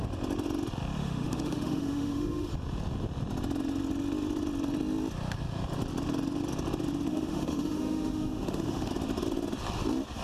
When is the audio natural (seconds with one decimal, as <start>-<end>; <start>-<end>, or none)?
0.0-1.0; 2.5-7.1; 8.9-10.2